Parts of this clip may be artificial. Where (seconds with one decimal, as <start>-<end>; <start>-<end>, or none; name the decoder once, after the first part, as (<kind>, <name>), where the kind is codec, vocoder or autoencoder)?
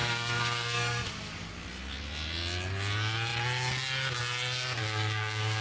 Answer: 0.0-1.5 (codec, DAC); 4.8-5.6